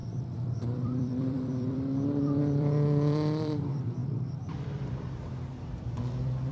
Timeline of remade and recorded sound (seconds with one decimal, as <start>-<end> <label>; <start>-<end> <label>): 0.0-6.5 remade